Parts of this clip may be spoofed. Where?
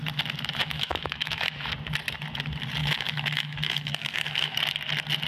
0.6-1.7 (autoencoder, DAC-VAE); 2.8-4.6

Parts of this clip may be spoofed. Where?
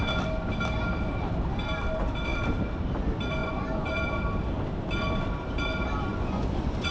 3.4-4.0 (vocoder, Vocos); 6.1-6.9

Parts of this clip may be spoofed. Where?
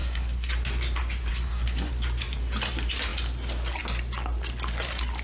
0.0-0.5 (codec, SNAC); 1.3-1.9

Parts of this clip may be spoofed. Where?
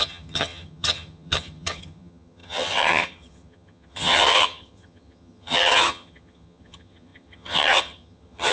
0.0-8.5 (vocoder, HiFi-GAN)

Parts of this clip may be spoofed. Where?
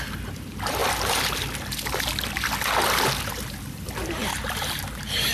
0.0-0.8 (vocoder, BigVGAN v2); 4.0-5.3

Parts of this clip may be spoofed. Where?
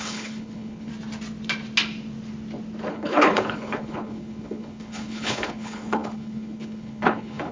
0.0-0.9 (codec, HILCodec); 2.9-7.5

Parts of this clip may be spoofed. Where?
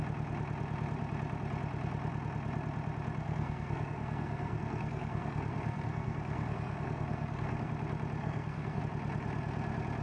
3.2-7.7 (codec, SNAC); 8.2-8.8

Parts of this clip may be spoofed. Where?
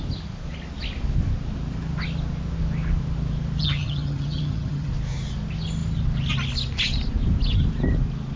3.6-4.9 (vocoder, HiFi-GAN)